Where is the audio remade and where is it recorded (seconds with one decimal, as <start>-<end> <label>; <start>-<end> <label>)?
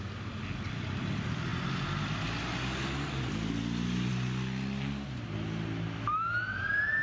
0.0-7.0 recorded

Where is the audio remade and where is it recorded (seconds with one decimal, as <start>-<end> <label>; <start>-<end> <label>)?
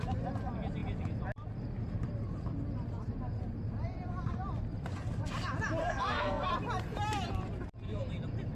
0.0-5.8 recorded; 5.8-6.5 remade; 6.5-8.6 recorded